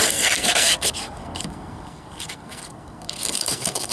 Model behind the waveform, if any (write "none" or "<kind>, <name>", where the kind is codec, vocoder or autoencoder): codec, SNAC